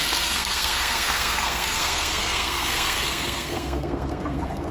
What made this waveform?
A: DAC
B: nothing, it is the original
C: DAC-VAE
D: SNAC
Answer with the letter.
D